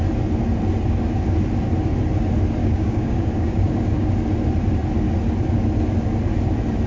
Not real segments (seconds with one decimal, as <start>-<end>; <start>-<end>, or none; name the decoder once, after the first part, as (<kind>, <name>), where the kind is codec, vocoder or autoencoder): 2.6-4.1 (codec, DAC)